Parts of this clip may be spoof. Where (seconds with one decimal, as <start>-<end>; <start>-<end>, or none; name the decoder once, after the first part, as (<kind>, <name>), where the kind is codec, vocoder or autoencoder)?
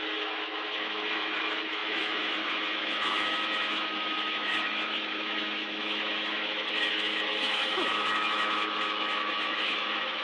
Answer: 0.0-10.2 (autoencoder, DAC-VAE)